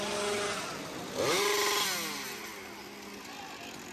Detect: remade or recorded recorded